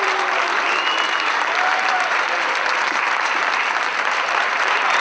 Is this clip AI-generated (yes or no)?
yes